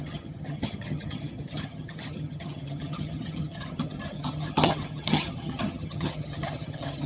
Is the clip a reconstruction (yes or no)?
yes